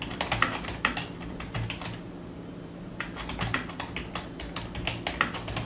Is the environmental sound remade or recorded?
recorded